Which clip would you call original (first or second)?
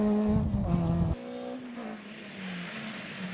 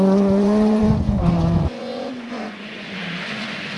first